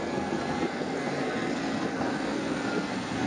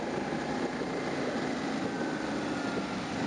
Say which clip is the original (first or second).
second